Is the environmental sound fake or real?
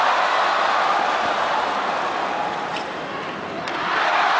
real